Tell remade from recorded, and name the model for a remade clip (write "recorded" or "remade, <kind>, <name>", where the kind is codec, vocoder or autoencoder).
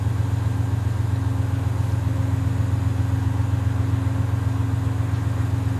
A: recorded